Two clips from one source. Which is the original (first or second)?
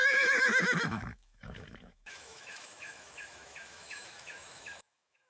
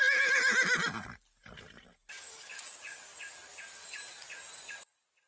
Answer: second